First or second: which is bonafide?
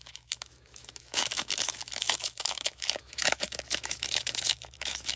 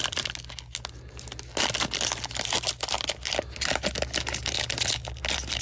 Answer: second